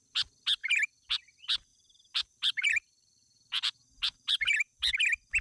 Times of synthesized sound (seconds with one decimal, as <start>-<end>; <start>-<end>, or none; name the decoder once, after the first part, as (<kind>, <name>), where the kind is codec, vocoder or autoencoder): 0.6-1.1 (vocoder, BigVGAN v2); 1.7-4.9